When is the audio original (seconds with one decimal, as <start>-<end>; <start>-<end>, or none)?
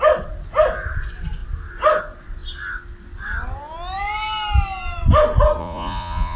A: 0.0-5.6